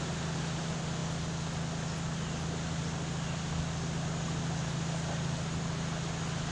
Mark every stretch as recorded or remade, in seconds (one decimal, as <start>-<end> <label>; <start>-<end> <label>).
0.0-6.5 recorded